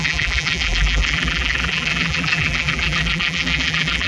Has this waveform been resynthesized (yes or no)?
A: yes